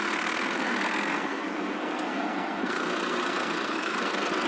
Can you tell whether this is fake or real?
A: fake